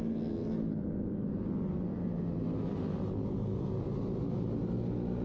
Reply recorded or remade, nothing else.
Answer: recorded